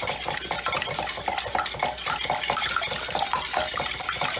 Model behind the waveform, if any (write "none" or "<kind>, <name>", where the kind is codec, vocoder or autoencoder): none